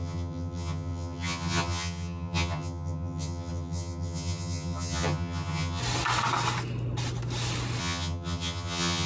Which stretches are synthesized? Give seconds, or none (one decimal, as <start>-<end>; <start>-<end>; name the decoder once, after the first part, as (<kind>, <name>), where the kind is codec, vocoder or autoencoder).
0.0-5.8 (vocoder, HiFi-GAN); 7.8-9.1